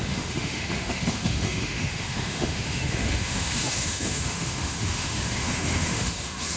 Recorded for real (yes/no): no